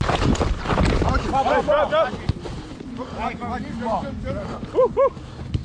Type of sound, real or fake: real